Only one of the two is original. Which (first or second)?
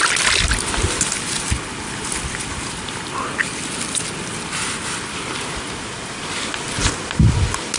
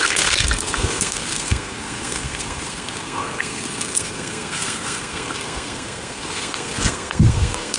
first